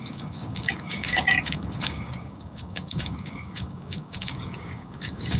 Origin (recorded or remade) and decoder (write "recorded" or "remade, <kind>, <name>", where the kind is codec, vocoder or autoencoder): remade, codec, DAC